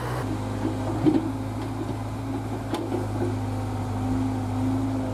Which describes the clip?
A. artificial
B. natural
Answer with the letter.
B